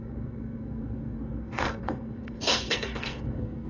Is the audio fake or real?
fake